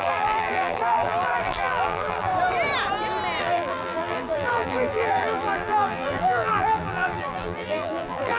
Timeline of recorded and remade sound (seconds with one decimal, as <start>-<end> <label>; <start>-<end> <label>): 0.0-2.3 remade; 2.3-3.4 recorded; 3.4-8.4 remade